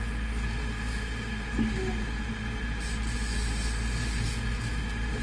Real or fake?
real